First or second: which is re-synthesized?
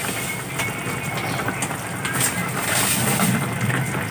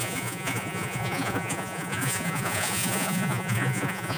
second